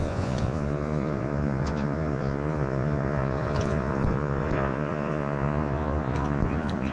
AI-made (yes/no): yes